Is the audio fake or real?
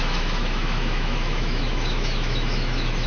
fake